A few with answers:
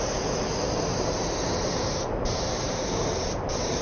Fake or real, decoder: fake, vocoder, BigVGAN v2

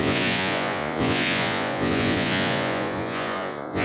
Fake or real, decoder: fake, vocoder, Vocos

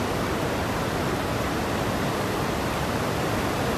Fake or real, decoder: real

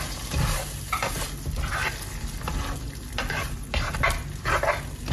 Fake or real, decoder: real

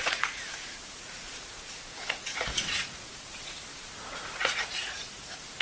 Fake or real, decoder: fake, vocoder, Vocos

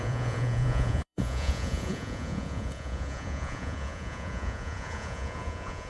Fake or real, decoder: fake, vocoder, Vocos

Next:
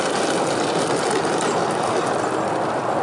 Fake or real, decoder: real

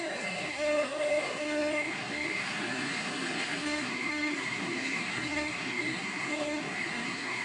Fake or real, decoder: fake, codec, SNAC